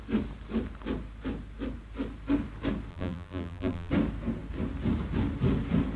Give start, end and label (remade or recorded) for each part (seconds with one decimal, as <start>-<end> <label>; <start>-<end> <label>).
0.0-2.9 recorded; 2.9-3.9 remade; 3.9-6.0 recorded